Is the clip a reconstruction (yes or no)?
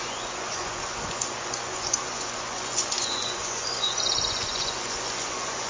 yes